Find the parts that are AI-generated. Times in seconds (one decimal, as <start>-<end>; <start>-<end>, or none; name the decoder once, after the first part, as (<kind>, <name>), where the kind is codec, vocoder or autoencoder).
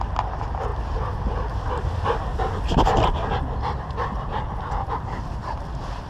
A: none